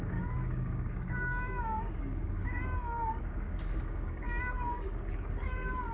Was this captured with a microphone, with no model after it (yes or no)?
no